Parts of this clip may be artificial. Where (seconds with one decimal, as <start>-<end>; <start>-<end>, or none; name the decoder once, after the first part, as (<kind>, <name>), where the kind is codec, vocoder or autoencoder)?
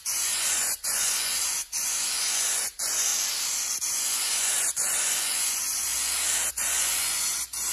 0.0-3.1 (vocoder, Vocos); 3.8-5.9; 6.5-7.7